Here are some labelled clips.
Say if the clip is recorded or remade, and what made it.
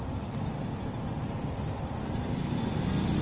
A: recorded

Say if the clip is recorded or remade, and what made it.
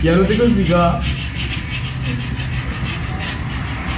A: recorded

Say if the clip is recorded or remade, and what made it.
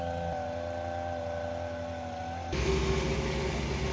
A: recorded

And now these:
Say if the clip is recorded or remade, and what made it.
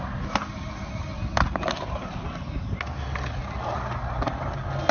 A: recorded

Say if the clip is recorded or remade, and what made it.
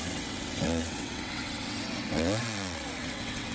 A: remade, vocoder, WaveNeXt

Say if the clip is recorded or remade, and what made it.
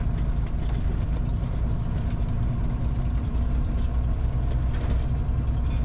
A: recorded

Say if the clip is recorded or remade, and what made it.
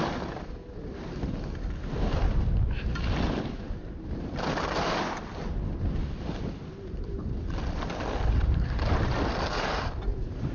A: recorded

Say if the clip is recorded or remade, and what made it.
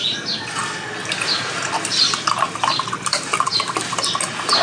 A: recorded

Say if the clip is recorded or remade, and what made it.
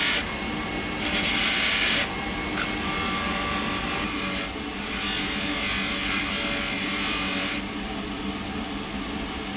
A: recorded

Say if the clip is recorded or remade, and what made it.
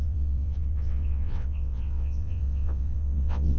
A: remade, vocoder, WaveNeXt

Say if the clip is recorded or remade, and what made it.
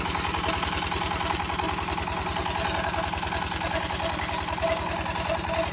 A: recorded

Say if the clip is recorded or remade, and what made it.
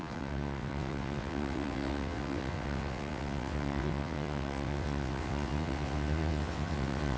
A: remade, vocoder, WaveNeXt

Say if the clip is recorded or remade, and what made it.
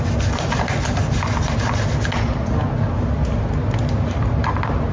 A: recorded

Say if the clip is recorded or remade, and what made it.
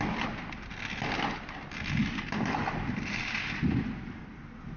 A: recorded